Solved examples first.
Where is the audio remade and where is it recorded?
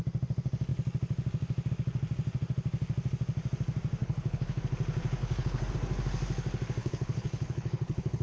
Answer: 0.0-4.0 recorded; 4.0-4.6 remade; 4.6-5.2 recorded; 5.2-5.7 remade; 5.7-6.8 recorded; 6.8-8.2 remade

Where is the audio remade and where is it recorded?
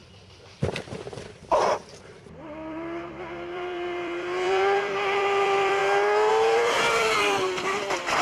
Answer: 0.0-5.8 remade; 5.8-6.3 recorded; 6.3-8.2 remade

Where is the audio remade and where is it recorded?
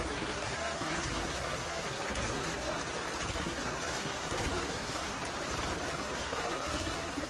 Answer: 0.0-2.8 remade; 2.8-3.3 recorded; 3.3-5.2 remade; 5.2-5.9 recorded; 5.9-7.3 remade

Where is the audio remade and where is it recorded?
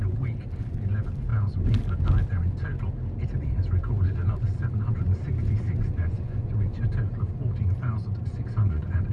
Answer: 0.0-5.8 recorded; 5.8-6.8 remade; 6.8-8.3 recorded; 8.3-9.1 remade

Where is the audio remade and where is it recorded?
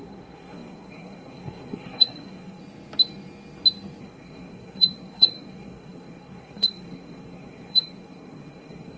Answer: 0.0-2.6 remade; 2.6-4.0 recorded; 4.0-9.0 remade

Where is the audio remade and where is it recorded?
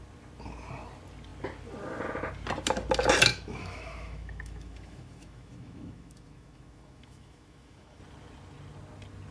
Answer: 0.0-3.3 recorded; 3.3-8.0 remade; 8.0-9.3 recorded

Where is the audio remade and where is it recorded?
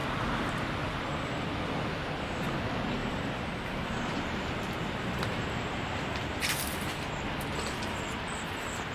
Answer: 0.0-0.5 remade; 0.5-3.0 recorded; 3.0-7.1 remade; 7.1-8.9 recorded